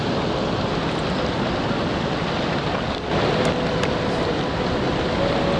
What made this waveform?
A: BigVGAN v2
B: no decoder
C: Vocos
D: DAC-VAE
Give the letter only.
B